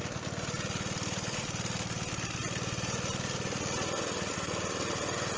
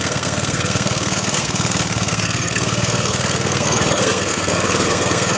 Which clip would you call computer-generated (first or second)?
second